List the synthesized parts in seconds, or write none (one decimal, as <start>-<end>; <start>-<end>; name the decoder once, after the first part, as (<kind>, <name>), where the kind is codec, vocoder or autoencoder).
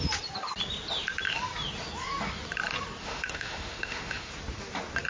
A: 3.0-4.3 (autoencoder, DAC-VAE)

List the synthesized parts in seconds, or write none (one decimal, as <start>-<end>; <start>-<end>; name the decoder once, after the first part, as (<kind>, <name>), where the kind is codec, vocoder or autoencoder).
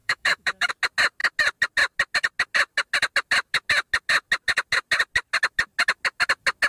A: 0.0-0.7 (autoencoder, DAC-VAE)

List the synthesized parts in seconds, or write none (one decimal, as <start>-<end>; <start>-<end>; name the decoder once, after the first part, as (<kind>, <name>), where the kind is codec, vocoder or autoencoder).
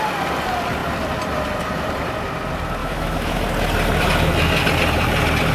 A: 2.8-3.4 (autoencoder, DAC-VAE)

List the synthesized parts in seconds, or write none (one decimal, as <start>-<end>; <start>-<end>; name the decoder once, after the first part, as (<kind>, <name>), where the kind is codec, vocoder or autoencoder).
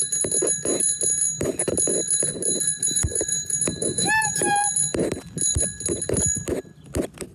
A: 2.8-4.5 (autoencoder, DAC-VAE)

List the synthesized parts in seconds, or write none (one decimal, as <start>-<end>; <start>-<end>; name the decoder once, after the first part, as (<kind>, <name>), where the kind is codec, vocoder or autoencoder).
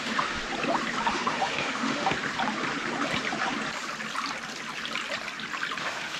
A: 0.0-0.4 (autoencoder, DAC-VAE); 1.1-2.1; 5.8-6.2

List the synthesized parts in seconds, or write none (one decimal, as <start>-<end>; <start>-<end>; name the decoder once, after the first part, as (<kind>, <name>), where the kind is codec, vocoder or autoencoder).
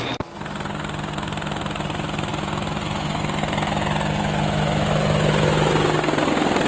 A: 2.3-5.7 (autoencoder, DAC-VAE)